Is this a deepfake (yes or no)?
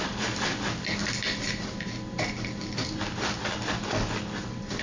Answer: no